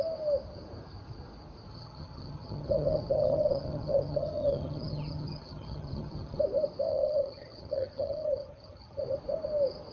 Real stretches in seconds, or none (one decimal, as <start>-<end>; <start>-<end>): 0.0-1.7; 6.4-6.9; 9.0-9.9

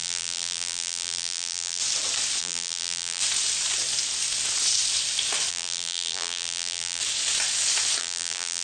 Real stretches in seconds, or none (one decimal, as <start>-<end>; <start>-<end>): 1.8-2.4; 3.2-5.5; 7.0-8.0

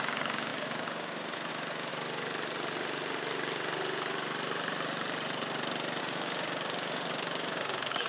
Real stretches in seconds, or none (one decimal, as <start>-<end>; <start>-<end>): 1.9-6.0

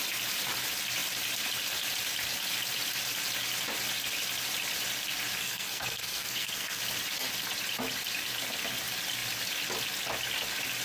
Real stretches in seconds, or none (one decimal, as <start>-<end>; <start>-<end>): 0.0-5.4; 6.8-10.8

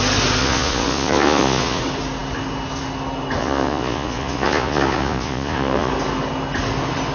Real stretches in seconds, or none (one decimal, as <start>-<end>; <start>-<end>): 0.0-0.4; 1.8-3.4; 5.9-7.1

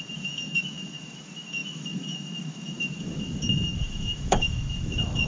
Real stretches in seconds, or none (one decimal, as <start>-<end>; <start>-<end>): none

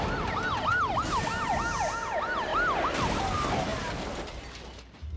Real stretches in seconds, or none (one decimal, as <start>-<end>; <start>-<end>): 0.0-5.2